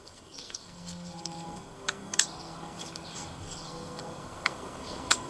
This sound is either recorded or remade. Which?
remade